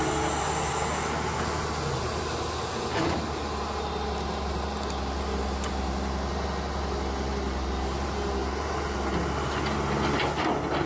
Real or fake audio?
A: real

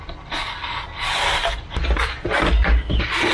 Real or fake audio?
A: real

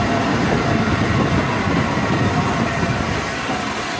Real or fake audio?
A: real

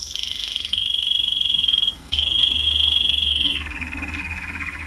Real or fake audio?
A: fake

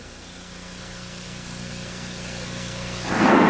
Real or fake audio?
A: fake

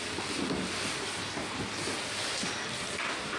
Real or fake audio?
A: real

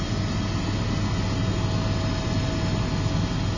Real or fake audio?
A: real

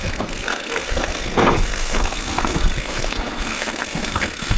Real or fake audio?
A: fake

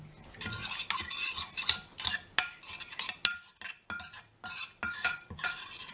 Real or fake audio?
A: real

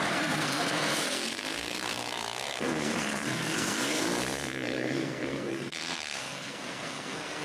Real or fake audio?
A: fake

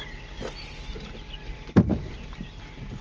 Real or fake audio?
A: real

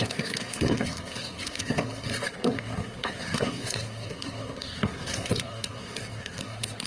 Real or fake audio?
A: fake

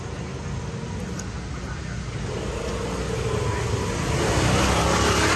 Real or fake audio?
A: real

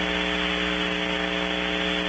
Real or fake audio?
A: real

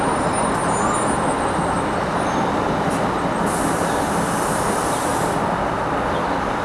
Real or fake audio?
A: real